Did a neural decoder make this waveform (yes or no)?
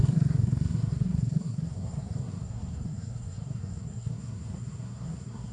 yes